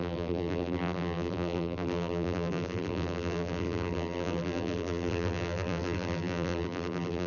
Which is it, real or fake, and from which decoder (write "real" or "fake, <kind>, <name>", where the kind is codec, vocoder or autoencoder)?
fake, vocoder, BigVGAN v2